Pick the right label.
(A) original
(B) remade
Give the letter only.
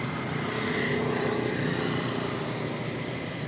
A